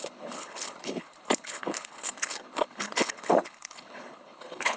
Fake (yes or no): yes